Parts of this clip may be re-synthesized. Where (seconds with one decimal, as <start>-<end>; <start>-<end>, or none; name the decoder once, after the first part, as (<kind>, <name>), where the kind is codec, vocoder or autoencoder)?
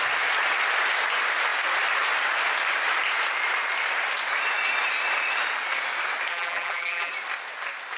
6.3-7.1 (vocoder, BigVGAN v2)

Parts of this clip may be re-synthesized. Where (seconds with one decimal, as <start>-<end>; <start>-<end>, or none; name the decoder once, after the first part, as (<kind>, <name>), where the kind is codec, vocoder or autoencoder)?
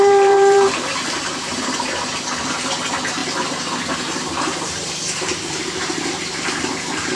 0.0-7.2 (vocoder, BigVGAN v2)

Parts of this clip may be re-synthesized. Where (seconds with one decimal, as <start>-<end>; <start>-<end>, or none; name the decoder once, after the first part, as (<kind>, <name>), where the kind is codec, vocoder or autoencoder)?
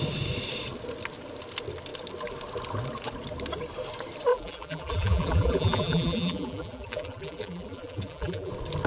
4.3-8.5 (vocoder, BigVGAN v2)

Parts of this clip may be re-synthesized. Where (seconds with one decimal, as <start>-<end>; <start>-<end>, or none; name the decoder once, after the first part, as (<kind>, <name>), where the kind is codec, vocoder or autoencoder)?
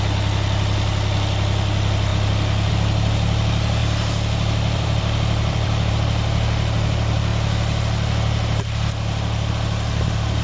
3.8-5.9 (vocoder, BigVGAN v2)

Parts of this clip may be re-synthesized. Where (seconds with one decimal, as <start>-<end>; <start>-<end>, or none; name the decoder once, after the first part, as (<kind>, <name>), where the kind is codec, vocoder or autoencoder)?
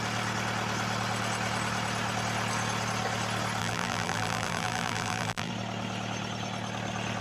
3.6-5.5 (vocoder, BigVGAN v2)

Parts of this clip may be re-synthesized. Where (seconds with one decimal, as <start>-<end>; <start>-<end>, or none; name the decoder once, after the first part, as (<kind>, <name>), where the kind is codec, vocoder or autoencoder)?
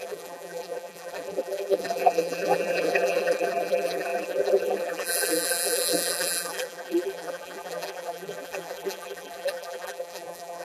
0.0-10.6 (vocoder, BigVGAN v2)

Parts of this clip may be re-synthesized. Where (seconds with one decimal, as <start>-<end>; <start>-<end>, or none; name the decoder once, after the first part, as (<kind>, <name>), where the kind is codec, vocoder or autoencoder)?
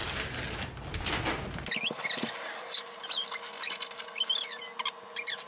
none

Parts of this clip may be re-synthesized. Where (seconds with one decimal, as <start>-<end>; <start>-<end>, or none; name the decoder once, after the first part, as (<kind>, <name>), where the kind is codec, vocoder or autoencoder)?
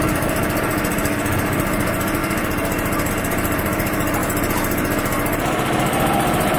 0.0-0.7 (vocoder, BigVGAN v2); 1.3-2.2; 3.1-4.2; 5.4-6.6